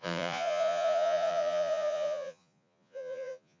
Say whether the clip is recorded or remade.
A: remade